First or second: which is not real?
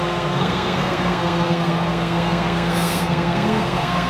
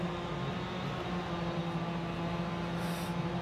first